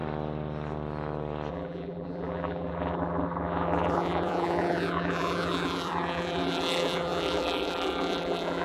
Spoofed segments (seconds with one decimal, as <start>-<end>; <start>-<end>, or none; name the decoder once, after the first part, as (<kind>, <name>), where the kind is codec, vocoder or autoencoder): 1.5-8.6 (vocoder, BigVGAN v2)